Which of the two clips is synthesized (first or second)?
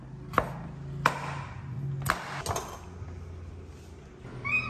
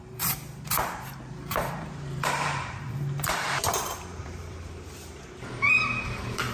second